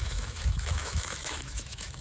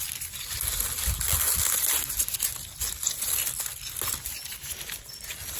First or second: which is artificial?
first